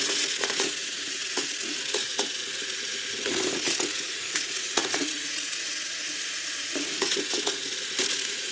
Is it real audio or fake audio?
fake